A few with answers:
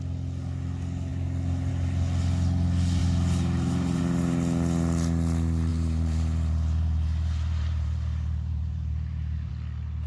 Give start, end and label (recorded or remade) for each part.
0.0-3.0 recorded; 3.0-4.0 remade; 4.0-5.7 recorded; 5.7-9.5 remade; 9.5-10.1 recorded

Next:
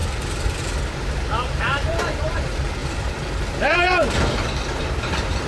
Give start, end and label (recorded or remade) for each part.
0.0-0.9 recorded; 0.9-5.5 remade